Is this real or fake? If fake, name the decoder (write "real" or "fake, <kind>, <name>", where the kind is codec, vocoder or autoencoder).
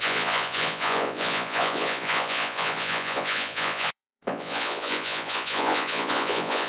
fake, vocoder, Vocos